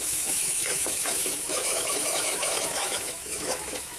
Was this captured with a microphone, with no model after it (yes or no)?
no